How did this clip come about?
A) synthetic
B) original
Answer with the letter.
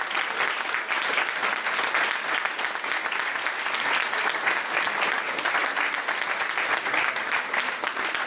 B